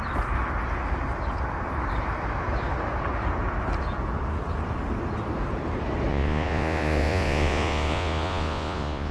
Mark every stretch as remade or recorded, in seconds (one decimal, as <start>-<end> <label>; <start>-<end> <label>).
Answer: 0.0-6.1 recorded; 6.1-9.1 remade